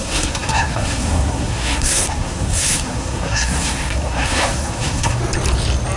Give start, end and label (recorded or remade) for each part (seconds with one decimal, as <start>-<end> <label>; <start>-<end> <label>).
0.0-5.2 remade; 5.2-6.0 recorded